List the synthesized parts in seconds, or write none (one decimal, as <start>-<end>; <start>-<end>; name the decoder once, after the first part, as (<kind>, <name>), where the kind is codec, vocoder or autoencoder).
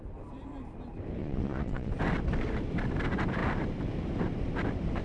1.2-1.9 (vocoder, Vocos)